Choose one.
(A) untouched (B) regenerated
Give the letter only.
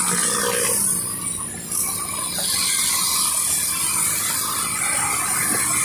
A